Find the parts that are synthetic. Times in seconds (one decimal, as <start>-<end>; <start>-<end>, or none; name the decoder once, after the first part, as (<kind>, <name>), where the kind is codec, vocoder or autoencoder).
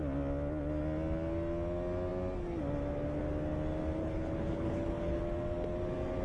4.0-5.2 (codec, HILCodec)